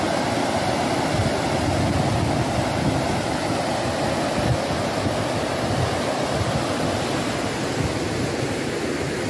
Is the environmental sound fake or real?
real